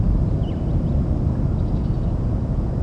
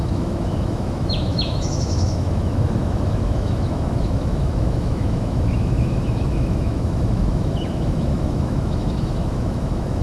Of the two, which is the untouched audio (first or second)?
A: first